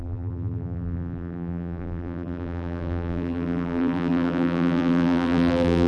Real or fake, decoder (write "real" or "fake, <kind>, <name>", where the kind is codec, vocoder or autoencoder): fake, vocoder, BigVGAN v2